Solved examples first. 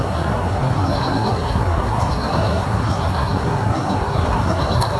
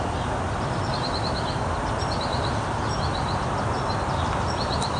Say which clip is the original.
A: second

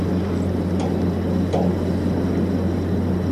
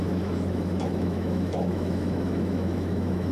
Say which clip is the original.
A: first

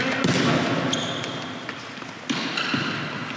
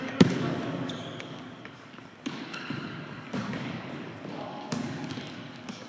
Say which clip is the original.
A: first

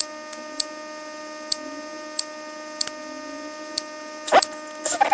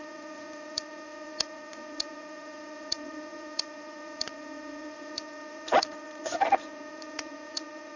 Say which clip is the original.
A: first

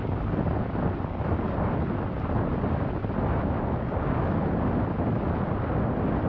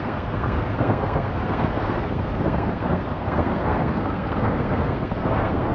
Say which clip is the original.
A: first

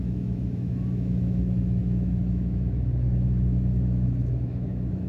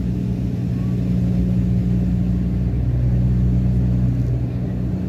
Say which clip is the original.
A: second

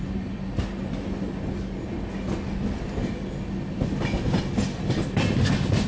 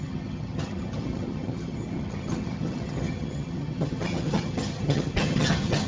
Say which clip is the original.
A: first